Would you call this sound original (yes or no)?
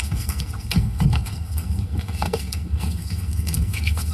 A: no